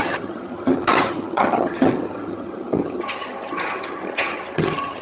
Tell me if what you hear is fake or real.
fake